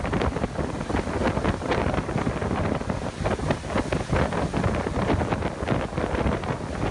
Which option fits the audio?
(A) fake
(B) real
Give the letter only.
B